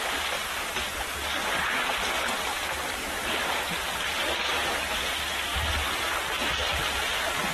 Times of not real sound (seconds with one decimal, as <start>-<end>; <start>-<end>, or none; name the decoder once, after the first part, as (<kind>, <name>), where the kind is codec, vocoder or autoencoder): none